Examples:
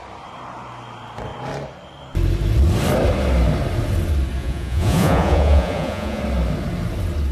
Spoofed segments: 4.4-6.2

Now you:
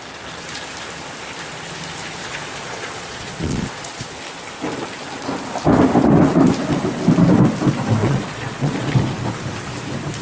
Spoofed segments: 2.2-4.0; 8.0-8.9

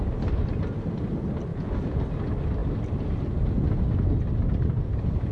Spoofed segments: 1.5-2.0

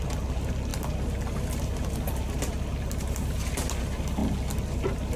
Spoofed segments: none

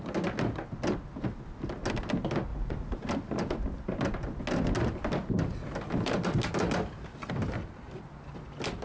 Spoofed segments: 2.5-3.1

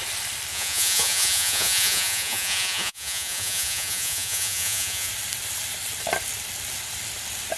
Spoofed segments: 0.5-5.1